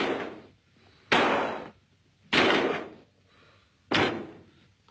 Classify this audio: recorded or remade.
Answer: recorded